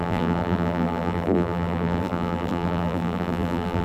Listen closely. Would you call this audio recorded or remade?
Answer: remade